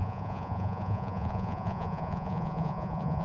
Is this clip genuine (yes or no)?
no